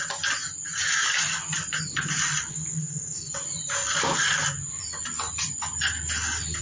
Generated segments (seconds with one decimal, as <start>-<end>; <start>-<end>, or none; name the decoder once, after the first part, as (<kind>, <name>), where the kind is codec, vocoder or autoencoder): 2.5-3.3 (codec, SNAC)